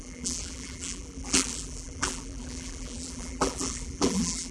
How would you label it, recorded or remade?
remade